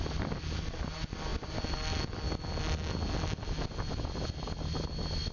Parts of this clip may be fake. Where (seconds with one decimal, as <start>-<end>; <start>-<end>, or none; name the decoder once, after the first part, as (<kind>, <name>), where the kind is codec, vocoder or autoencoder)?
none